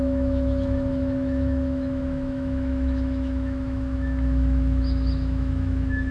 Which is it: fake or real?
fake